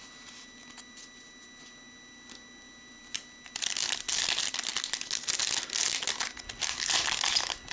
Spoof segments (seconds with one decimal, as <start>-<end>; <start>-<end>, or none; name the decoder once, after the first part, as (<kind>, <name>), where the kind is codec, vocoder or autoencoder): none